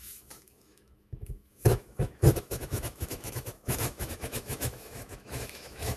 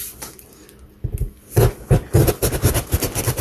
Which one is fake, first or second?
first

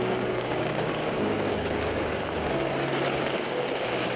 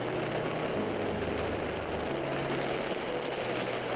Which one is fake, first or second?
first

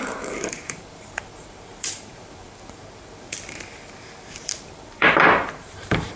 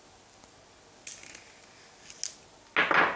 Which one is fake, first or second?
first